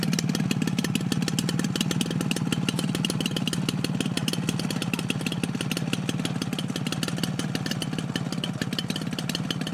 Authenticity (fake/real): real